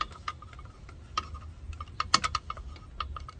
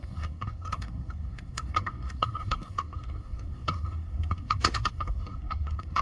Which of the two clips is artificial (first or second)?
second